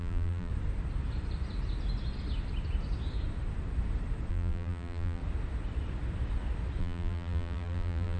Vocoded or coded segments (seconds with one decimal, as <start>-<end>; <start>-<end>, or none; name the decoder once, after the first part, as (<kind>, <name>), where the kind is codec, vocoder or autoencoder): 0.0-0.5 (vocoder, BigVGAN v2); 4.3-5.2; 6.8-8.2